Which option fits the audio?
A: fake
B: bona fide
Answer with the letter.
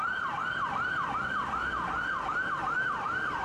A